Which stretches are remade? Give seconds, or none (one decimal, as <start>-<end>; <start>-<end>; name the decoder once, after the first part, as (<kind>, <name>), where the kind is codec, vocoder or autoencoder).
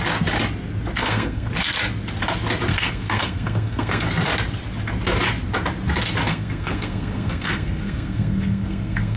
1.0-1.5 (codec, SNAC); 2.7-4.1; 6.3-9.2